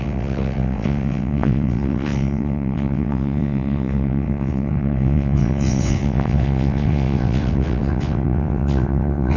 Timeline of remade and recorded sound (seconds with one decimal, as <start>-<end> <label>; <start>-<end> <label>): 0.0-9.4 remade